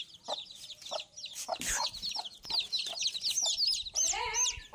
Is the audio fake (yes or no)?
no